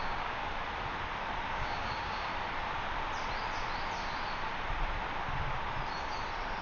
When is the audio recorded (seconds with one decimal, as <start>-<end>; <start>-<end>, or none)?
0.4-1.5; 2.3-6.6